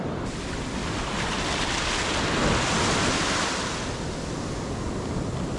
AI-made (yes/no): no